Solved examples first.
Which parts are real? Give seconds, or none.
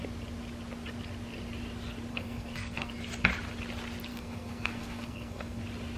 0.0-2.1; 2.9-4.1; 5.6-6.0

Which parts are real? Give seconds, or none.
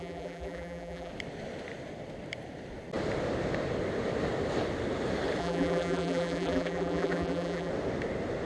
1.1-5.4; 7.7-8.5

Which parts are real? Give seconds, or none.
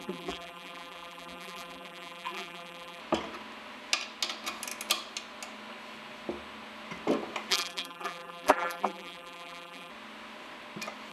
3.0-7.5; 9.9-11.1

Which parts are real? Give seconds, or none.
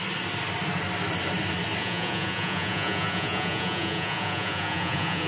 0.0-1.8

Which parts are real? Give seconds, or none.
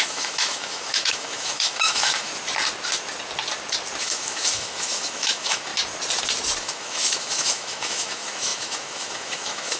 2.3-4.0; 5.7-6.6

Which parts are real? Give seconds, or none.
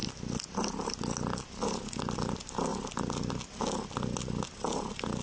0.0-5.2